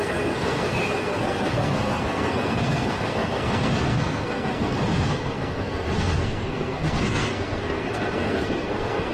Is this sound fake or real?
fake